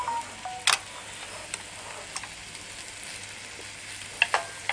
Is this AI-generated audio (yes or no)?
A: no